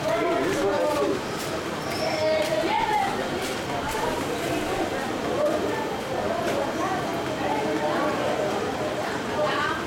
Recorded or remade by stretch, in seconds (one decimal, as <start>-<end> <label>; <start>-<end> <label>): 0.0-2.2 remade; 2.2-3.2 recorded; 3.2-7.1 remade; 7.1-7.6 recorded; 7.6-9.9 remade

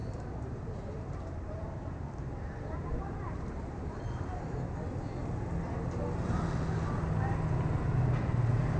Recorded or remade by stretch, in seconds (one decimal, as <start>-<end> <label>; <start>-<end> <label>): 0.0-4.3 remade; 4.3-7.8 recorded; 7.8-8.8 remade

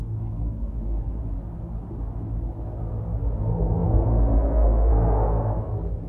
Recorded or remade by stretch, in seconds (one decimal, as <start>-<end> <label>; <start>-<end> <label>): 0.0-1.2 remade; 1.2-3.4 recorded; 3.4-6.1 remade